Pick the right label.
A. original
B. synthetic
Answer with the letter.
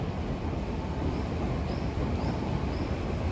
B